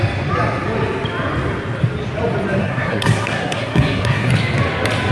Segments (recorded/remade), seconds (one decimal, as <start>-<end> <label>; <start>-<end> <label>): 0.0-2.6 recorded; 2.6-4.3 remade; 4.3-5.1 recorded